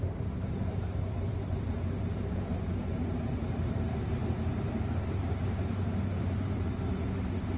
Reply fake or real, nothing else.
fake